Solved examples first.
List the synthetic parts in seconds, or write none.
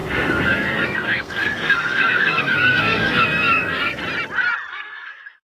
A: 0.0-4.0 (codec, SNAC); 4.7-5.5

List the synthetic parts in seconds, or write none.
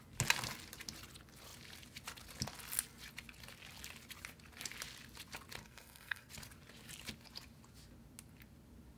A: 5.6-6.3 (codec, SNAC)